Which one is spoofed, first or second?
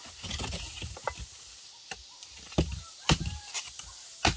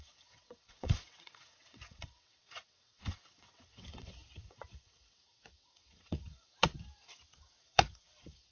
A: second